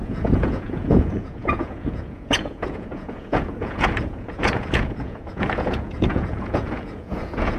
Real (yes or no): no